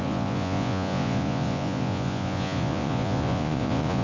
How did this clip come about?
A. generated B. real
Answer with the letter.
A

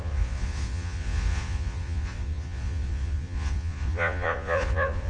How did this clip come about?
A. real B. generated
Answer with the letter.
B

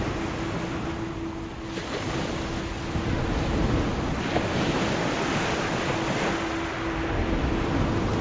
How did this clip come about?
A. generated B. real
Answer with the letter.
B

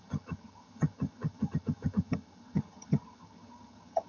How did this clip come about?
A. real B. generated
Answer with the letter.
B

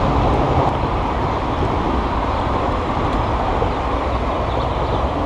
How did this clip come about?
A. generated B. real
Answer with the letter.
B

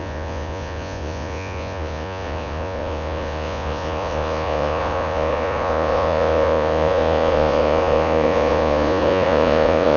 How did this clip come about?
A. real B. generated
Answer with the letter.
B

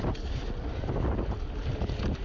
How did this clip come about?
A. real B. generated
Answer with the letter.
A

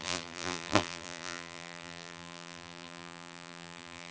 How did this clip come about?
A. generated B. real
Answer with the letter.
A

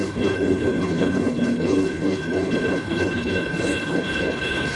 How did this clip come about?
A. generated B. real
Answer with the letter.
A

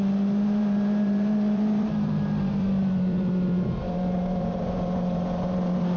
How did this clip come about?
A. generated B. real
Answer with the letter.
A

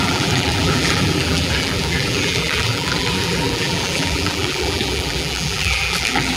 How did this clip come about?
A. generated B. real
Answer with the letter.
A